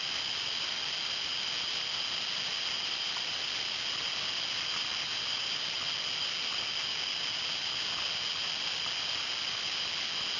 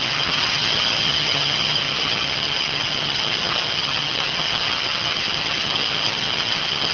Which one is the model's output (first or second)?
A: second